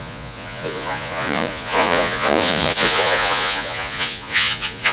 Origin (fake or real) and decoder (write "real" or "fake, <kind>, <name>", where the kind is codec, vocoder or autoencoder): fake, vocoder, Vocos